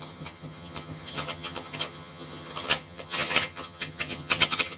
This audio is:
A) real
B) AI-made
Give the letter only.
B